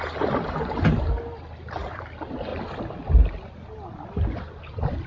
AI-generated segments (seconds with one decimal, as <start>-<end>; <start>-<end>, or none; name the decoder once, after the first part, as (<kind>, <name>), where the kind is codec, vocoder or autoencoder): none

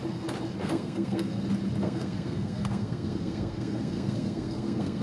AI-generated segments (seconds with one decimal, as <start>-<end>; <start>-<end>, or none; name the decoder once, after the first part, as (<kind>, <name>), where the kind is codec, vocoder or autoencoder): 0.6-1.4 (codec, SNAC); 1.8-5.0

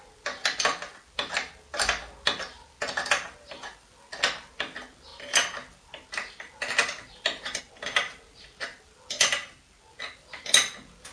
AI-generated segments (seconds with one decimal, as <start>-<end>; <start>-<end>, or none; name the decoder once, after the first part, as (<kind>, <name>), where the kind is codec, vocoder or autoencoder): none

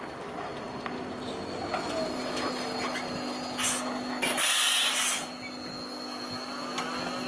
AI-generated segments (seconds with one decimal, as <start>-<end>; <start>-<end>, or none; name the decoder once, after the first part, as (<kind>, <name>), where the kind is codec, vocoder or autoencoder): none

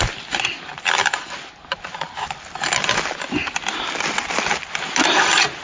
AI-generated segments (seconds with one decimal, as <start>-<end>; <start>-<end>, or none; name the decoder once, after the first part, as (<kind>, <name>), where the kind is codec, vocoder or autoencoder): none

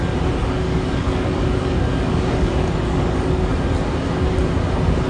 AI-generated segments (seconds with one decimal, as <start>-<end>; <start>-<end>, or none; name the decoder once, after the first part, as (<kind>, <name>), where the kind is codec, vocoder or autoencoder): 0.4-3.5 (codec, DAC)

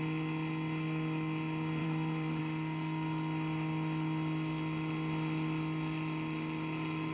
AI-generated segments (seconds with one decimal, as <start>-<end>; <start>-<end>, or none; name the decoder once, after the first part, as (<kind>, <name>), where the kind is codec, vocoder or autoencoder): 1.8-2.4 (vocoder, BigVGAN v2)